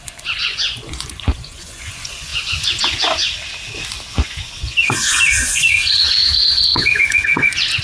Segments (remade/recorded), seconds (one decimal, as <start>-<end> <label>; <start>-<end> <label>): 0.0-3.2 remade; 3.2-4.1 recorded; 4.1-7.8 remade